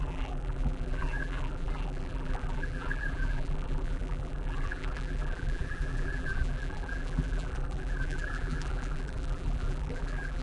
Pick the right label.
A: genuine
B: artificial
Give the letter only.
B